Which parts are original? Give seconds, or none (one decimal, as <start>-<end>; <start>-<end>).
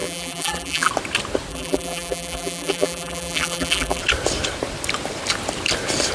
0.9-1.5; 4.0-6.1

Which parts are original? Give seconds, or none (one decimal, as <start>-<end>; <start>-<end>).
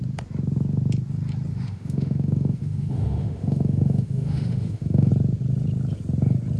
0.0-1.5; 5.1-6.6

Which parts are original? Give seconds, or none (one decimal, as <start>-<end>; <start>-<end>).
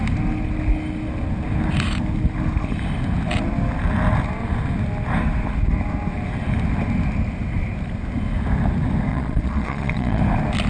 0.0-9.1; 10.2-10.7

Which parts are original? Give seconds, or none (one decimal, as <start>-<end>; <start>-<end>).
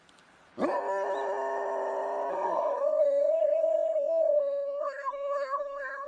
0.0-2.3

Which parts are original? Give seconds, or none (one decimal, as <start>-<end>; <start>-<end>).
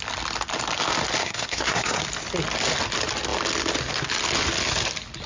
0.0-1.2; 2.0-5.3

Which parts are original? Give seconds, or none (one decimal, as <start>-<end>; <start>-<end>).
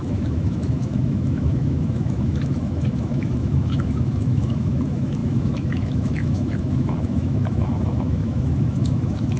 none